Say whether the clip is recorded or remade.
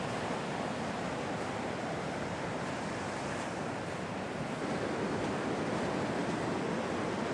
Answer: remade